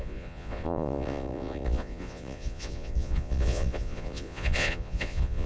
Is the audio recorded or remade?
remade